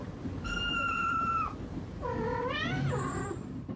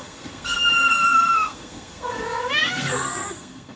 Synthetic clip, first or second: second